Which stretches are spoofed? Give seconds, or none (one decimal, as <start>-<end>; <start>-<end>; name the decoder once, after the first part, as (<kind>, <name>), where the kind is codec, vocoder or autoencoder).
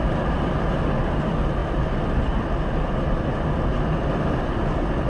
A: none